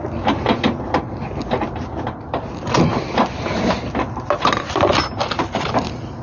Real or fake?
real